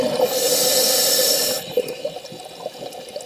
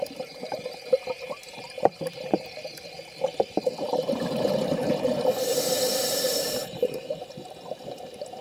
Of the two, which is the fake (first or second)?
second